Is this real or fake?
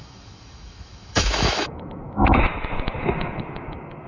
fake